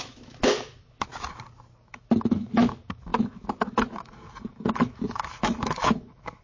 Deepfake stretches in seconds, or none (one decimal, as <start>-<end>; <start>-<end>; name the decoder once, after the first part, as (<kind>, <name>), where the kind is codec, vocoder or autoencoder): 0.0-1.1 (autoencoder, DAC-VAE); 1.8-6.4